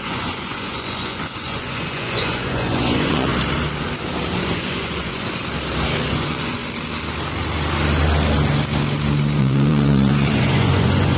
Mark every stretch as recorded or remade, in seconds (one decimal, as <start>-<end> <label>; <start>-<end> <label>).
0.0-3.3 remade; 3.3-4.4 recorded; 4.4-5.4 remade; 5.4-6.1 recorded; 6.1-6.6 remade; 6.6-9.4 recorded; 9.4-11.2 remade